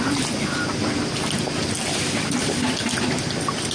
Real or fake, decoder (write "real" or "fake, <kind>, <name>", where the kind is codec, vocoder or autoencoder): real